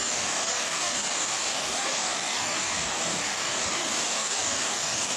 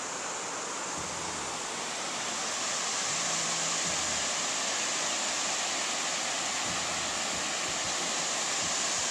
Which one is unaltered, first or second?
second